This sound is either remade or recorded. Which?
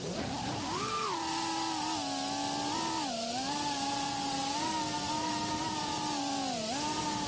recorded